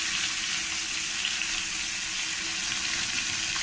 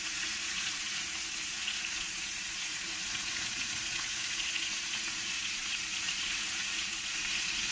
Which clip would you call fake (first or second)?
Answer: second